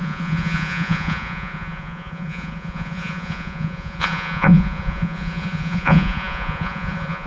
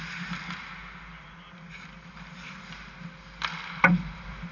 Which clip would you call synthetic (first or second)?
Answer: first